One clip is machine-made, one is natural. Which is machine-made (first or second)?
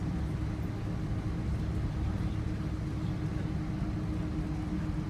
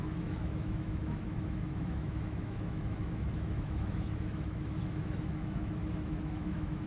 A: second